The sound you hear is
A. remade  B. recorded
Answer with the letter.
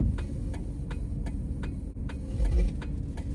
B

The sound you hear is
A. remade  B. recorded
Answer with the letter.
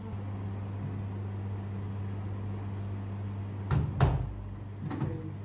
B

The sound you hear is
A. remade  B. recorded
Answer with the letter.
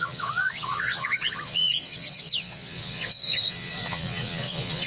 A